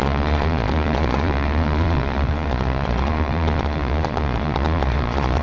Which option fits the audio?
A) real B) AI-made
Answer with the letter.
B